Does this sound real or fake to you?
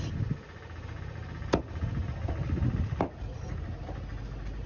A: real